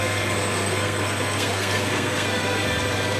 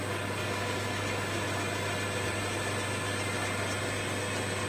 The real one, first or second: second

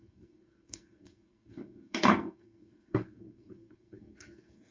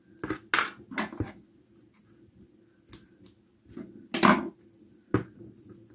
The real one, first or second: second